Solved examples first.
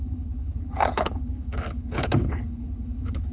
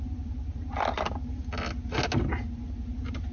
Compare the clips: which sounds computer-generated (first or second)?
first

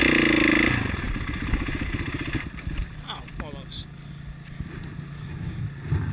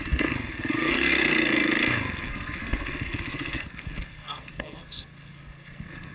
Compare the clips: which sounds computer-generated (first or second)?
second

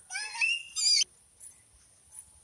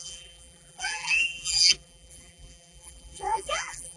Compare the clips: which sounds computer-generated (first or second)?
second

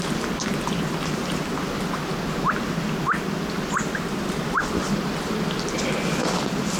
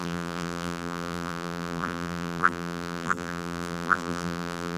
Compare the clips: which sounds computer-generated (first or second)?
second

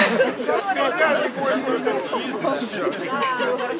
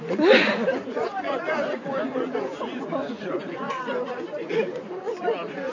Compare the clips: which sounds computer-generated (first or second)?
second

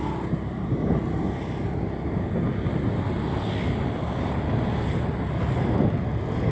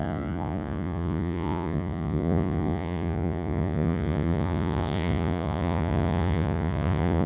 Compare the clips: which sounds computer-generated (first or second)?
second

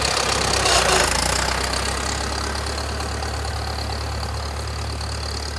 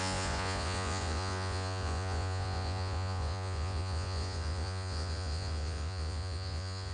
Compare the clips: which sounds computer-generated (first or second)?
second